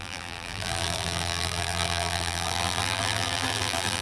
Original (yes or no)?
no